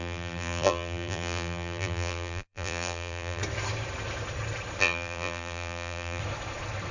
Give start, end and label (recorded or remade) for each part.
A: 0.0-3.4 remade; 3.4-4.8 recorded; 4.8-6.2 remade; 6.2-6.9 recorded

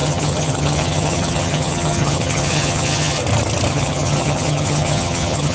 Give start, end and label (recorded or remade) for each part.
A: 0.0-3.2 remade; 3.2-3.7 recorded; 3.7-5.5 remade

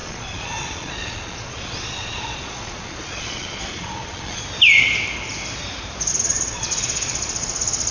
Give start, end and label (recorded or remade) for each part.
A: 0.0-4.4 remade; 4.4-6.1 recorded; 6.1-7.9 remade

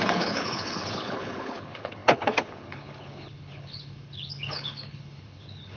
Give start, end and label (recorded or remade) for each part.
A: 0.0-5.8 remade

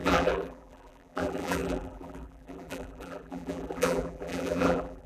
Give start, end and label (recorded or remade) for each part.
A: 0.0-5.1 remade

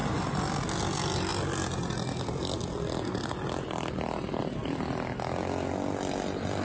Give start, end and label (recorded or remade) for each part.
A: 0.0-6.6 recorded

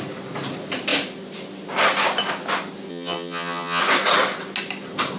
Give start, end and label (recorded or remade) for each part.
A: 0.0-2.9 recorded; 2.9-3.8 remade; 3.8-5.2 recorded

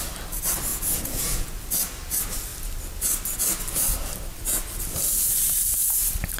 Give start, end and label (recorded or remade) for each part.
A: 0.0-0.7 recorded; 0.7-1.5 remade; 1.5-6.4 recorded